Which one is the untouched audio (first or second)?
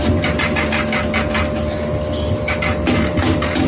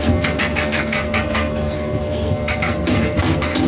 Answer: first